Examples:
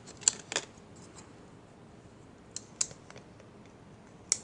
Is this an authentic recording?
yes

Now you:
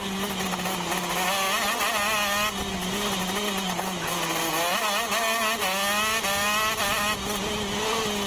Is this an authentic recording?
yes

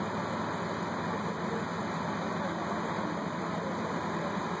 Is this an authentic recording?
yes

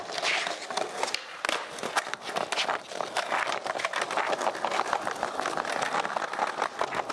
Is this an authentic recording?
yes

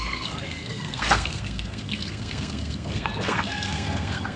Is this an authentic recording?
no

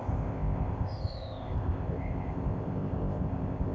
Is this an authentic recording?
no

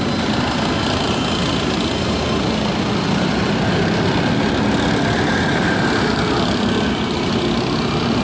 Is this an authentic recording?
yes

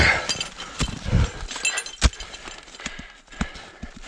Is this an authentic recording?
yes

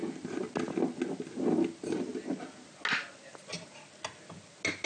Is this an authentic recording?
yes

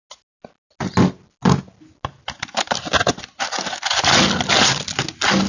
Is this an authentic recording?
yes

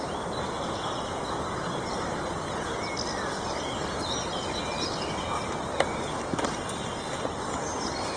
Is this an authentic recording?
yes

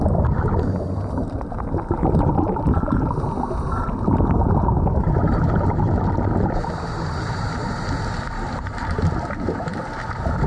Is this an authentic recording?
yes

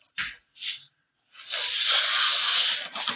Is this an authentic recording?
yes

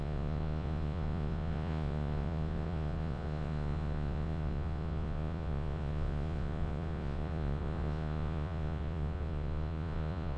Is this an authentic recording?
no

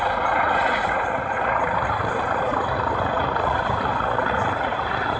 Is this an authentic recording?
no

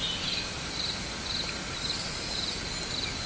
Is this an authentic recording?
yes